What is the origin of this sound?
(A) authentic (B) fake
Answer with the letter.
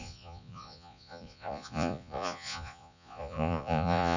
B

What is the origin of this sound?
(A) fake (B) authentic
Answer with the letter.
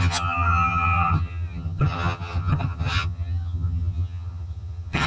A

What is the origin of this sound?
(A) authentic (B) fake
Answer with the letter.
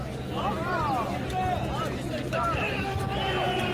A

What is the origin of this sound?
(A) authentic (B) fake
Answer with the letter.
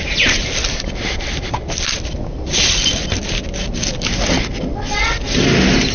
A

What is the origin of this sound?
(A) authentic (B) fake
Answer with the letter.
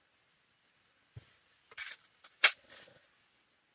A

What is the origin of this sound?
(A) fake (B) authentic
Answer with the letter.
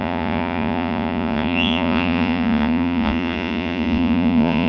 A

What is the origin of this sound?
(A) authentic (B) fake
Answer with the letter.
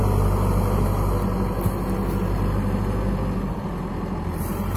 A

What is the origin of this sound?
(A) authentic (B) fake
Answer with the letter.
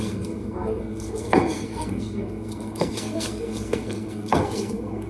B